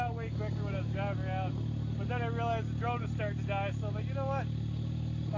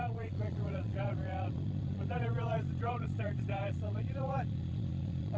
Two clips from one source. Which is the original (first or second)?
first